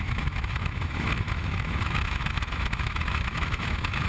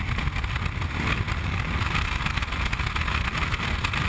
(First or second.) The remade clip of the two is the first